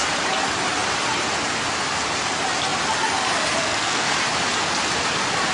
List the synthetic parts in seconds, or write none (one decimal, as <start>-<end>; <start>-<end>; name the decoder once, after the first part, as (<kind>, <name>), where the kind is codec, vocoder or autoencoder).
3.6-4.1 (codec, SNAC)